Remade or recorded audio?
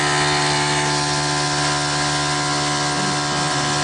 recorded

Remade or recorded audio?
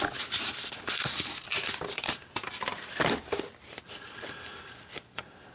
remade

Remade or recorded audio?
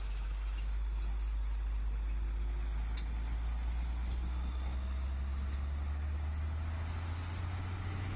recorded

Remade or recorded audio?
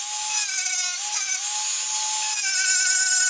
recorded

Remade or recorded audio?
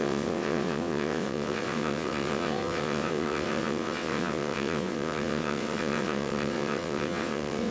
remade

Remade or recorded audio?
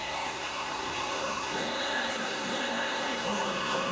remade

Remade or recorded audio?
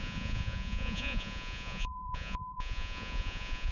remade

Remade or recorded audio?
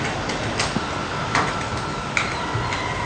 recorded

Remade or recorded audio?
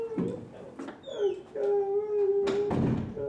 recorded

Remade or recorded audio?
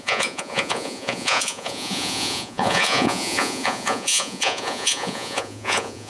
remade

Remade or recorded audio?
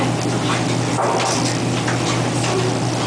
recorded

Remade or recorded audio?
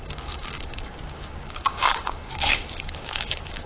remade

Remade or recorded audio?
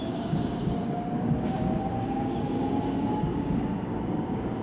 remade